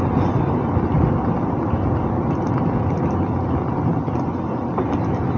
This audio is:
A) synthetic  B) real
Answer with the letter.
B